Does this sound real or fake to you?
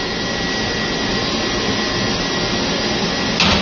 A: real